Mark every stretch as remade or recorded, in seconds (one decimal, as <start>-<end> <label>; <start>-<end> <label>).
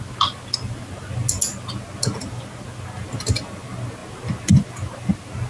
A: 0.0-5.5 recorded